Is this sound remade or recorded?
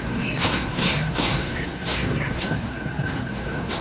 remade